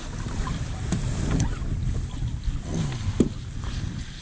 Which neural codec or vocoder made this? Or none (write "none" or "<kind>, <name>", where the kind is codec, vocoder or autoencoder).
none